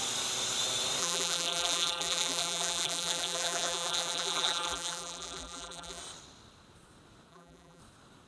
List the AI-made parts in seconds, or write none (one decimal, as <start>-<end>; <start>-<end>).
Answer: 1.0-6.0; 7.3-7.8